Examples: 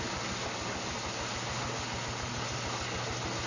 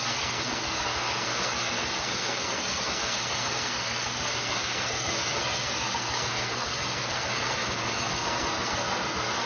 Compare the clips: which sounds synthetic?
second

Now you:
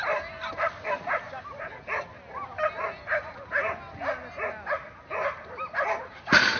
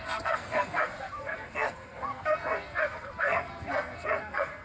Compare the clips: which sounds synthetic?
second